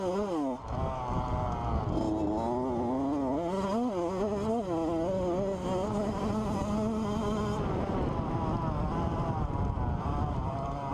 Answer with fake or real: real